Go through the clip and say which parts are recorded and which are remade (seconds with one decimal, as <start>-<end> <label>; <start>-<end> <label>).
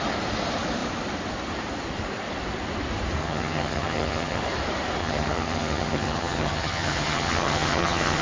0.0-3.2 recorded; 3.2-4.4 remade; 4.4-5.0 recorded; 5.0-8.2 remade